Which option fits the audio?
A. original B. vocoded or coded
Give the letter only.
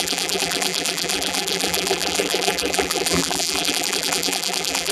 B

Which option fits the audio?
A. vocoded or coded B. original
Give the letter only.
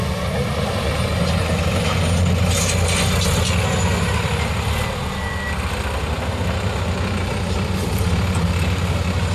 B